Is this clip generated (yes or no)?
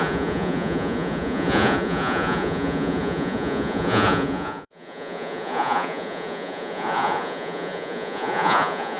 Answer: yes